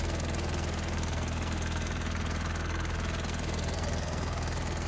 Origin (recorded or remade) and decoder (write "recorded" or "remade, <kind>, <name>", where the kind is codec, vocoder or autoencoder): remade, codec, SNAC